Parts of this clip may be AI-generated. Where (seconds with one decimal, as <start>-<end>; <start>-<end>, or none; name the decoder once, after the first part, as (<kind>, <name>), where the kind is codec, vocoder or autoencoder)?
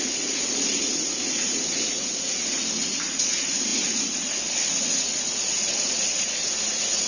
0.0-7.1 (vocoder, Vocos)